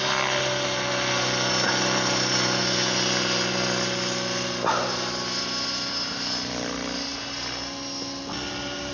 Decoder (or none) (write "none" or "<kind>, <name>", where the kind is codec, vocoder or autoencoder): none